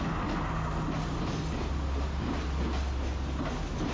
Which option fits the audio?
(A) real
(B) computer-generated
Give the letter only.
A